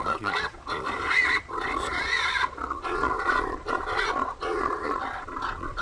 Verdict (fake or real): fake